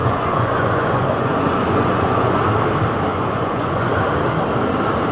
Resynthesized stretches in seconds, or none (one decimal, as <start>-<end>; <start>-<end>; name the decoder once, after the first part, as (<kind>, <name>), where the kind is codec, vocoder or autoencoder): 0.0-2.4 (vocoder, Vocos); 3.1-4.0